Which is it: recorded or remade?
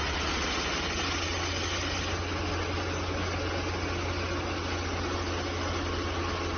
recorded